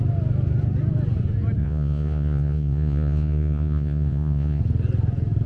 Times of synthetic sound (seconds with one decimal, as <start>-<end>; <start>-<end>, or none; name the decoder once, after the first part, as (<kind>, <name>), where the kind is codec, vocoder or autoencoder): 1.6-4.6 (vocoder, Vocos)